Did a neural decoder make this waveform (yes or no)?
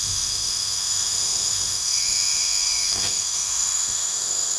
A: yes